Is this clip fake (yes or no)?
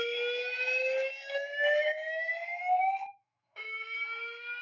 yes